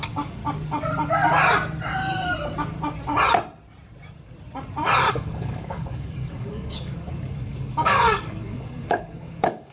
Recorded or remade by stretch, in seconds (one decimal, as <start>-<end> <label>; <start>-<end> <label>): 0.0-0.4 remade; 0.4-5.1 recorded; 5.1-9.7 remade